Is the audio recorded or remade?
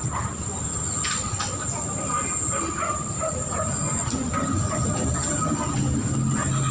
remade